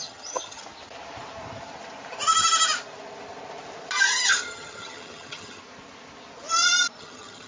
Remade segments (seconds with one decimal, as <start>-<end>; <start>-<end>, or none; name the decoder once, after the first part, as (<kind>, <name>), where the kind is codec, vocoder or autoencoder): 0.0-0.6 (vocoder, HiFi-GAN); 4.2-5.6; 7.0-7.5